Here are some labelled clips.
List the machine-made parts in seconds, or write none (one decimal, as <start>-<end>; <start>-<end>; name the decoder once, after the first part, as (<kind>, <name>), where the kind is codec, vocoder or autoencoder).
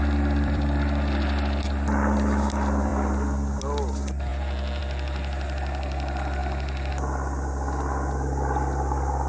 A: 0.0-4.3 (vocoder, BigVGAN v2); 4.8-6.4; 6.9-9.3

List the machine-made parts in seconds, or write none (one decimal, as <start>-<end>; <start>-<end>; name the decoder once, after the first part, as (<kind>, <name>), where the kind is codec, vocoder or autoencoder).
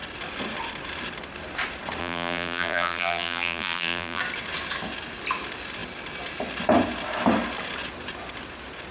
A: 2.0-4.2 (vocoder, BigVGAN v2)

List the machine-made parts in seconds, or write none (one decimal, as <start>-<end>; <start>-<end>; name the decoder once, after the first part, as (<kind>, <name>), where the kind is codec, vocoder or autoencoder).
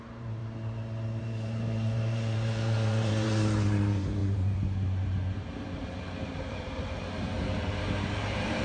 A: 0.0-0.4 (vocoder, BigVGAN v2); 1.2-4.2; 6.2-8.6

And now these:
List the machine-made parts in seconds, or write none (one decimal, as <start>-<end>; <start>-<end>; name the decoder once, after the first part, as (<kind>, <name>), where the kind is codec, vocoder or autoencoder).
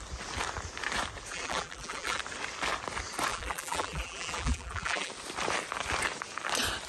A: 1.3-2.2 (vocoder, BigVGAN v2); 3.3-5.1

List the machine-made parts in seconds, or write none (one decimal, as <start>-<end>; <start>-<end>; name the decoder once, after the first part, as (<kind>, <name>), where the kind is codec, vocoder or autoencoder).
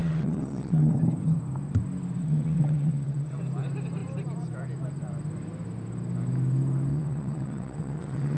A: 0.0-0.9 (vocoder, WaveNeXt); 2.2-3.4; 6.9-8.4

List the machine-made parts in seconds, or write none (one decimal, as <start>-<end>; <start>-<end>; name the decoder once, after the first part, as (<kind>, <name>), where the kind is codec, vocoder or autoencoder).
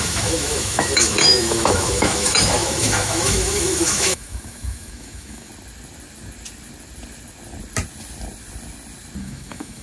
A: 0.0-5.5 (autoencoder, DAC-VAE); 9.2-9.8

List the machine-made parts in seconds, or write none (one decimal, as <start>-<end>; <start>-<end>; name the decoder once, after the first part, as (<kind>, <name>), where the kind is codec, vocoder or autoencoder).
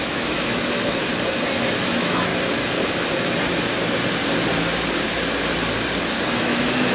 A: 0.0-1.1 (autoencoder, DAC-VAE); 1.9-2.3; 6.4-6.9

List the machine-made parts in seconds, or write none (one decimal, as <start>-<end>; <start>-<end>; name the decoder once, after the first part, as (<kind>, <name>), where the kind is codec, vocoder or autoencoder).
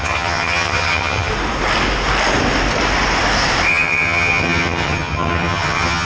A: 0.0-1.3 (vocoder, HiFi-GAN); 3.7-6.0